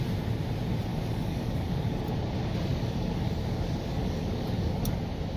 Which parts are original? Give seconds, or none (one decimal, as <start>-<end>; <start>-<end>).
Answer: 0.0-0.9; 2.0-2.7; 4.8-5.4